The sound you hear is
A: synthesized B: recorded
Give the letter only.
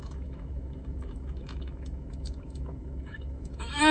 A